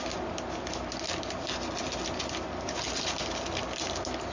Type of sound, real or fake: real